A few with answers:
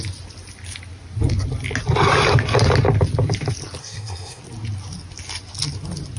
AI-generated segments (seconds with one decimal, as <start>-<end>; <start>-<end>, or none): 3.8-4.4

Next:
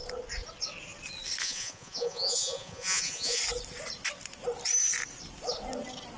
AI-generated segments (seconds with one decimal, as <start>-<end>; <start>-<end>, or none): 1.4-3.4

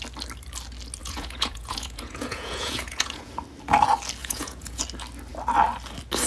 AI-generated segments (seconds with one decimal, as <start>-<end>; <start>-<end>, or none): 1.0-3.3; 4.2-4.8

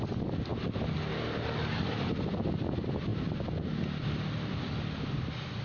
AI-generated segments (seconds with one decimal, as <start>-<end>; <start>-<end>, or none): none

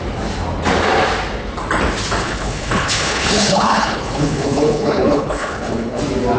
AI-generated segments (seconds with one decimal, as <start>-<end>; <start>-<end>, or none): 2.2-6.0